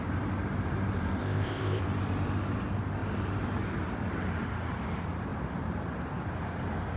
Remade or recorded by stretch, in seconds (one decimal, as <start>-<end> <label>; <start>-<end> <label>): 0.0-1.2 recorded; 1.2-1.8 remade; 1.8-7.0 recorded

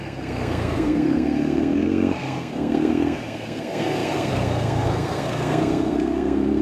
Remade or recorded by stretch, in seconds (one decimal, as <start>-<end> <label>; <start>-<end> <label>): 0.0-6.6 remade

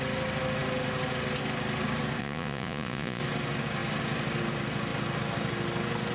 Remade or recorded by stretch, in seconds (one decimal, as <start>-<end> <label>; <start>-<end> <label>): 0.0-2.2 recorded; 2.2-3.2 remade; 3.2-6.1 recorded

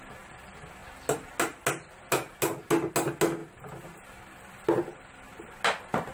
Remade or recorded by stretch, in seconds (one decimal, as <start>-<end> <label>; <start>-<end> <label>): 0.0-6.1 recorded